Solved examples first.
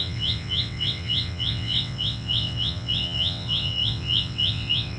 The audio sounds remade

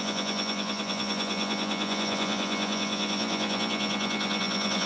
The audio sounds remade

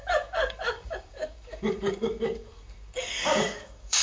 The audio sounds remade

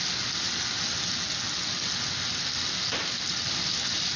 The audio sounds recorded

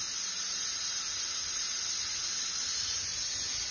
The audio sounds recorded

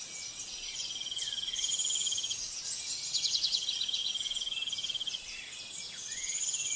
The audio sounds remade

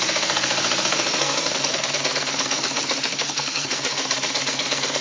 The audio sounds remade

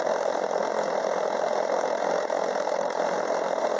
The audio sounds recorded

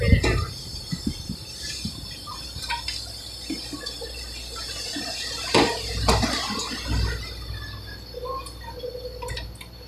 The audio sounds recorded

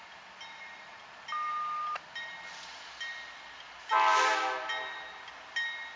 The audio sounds recorded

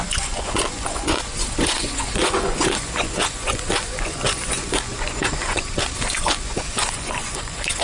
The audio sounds remade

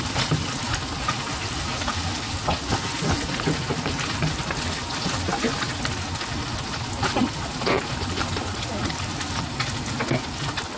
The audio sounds recorded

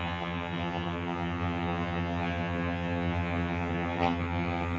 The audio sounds remade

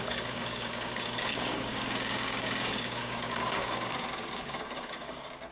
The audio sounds remade